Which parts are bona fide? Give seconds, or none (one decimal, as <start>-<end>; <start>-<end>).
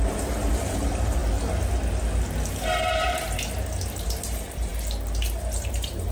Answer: 1.2-3.9; 4.7-5.5